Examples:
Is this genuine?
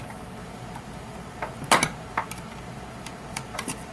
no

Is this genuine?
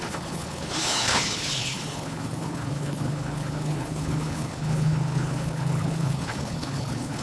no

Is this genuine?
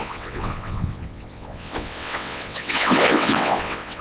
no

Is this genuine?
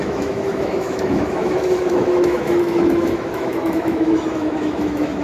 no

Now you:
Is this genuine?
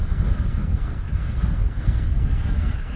no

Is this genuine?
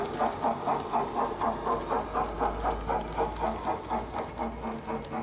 yes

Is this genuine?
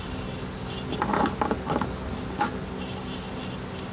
yes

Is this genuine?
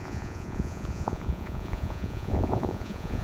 no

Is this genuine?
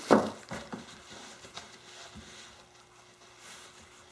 yes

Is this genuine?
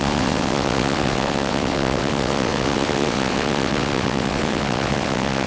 no